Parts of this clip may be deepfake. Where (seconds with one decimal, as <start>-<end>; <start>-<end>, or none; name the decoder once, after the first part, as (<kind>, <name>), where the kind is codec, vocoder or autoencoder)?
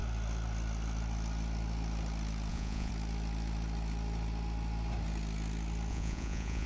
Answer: 2.5-2.9 (vocoder, Vocos); 5.9-6.7